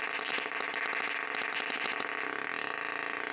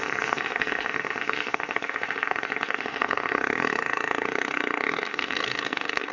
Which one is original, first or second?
first